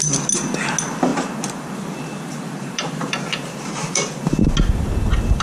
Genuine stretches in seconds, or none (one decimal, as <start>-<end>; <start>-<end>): 0.0-1.1; 4.1-5.4